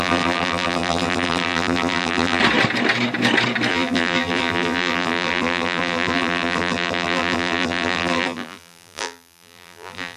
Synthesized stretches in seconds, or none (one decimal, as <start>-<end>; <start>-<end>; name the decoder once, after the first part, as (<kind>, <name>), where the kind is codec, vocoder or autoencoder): 0.0-2.4 (vocoder, BigVGAN v2); 3.7-10.2